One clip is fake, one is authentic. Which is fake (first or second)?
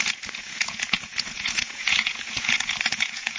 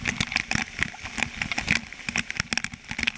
first